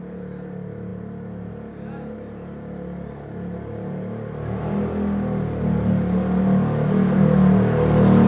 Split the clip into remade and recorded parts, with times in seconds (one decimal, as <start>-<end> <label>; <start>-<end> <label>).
0.0-8.3 recorded